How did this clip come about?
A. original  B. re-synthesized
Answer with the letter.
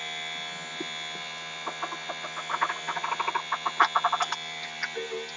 A